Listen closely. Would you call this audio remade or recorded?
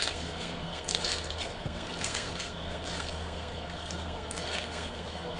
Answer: remade